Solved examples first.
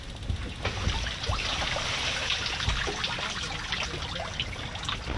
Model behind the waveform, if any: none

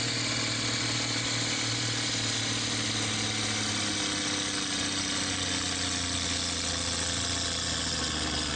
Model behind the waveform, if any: none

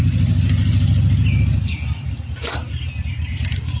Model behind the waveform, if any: none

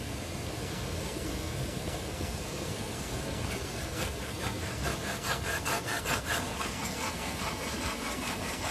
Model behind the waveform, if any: codec, SNAC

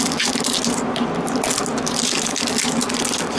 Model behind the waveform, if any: none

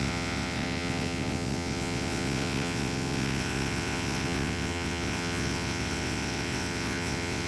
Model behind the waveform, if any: vocoder, WaveNeXt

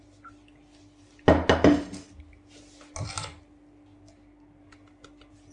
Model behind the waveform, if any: none